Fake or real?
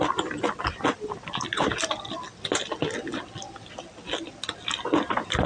real